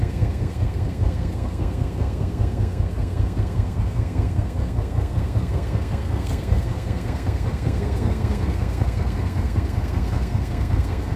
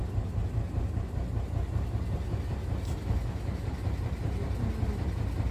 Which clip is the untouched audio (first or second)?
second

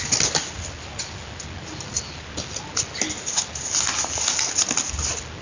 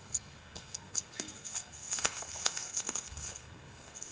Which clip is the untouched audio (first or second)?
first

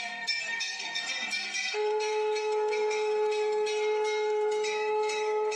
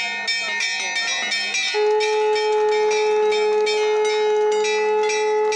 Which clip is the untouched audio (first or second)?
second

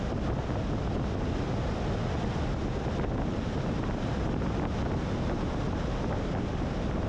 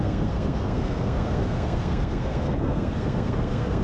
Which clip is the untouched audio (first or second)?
first